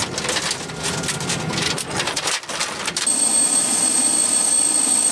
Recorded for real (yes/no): yes